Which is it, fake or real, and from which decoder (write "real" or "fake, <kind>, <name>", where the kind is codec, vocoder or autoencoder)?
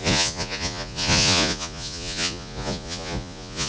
fake, vocoder, Vocos